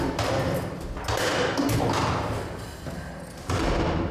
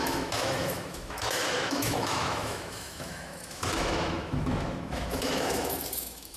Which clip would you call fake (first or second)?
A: second